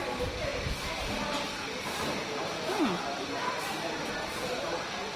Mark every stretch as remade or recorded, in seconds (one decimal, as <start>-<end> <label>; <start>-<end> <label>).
0.0-5.2 recorded